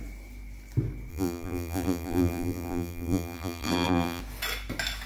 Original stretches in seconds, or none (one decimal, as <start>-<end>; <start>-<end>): 0.0-1.1; 4.2-5.1